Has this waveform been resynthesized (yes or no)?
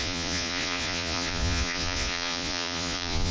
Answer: yes